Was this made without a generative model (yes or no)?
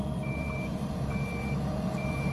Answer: no